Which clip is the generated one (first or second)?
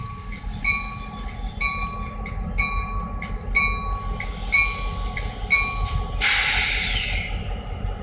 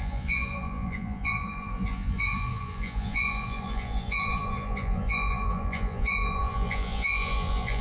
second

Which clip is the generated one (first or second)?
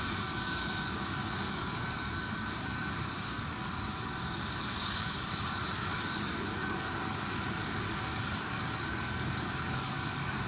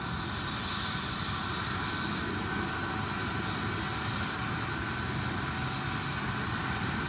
first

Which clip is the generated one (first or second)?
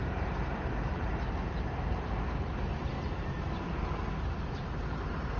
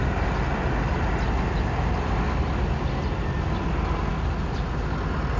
first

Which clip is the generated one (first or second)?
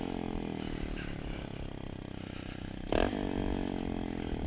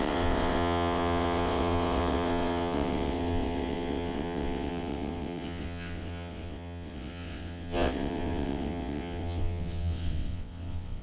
second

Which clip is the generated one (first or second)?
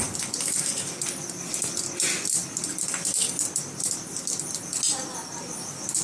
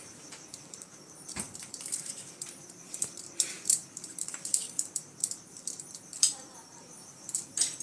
second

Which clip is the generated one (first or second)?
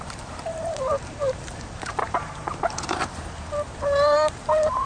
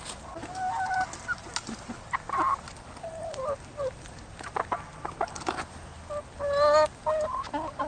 first